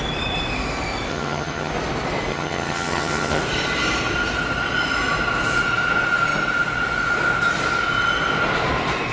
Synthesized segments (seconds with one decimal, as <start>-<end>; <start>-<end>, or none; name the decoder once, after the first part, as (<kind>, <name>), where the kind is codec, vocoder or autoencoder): 1.1-1.7 (vocoder, HiFi-GAN); 2.3-3.4